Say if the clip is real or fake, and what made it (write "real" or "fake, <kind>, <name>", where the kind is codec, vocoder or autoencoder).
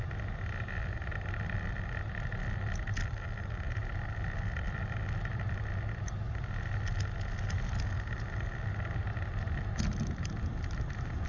real